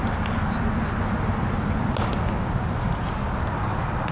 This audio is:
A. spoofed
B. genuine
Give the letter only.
B